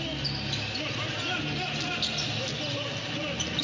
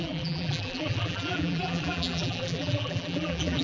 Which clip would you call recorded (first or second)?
first